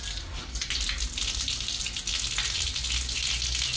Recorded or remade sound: recorded